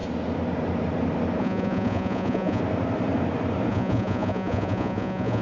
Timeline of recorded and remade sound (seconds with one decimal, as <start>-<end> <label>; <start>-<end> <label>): 0.0-1.4 recorded; 1.4-2.6 remade; 2.6-3.7 recorded; 3.7-5.4 remade